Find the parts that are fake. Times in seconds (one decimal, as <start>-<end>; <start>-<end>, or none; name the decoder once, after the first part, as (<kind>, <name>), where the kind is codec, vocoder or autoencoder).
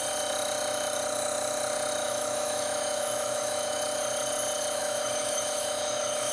2.0-3.8 (autoencoder, DAC-VAE); 4.8-6.3